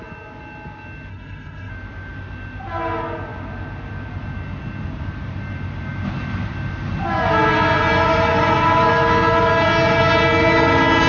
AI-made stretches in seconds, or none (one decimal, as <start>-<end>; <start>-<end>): 1.1-1.7